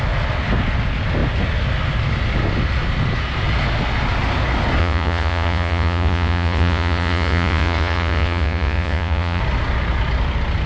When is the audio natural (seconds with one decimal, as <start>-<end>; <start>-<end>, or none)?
0.0-4.8; 9.4-10.7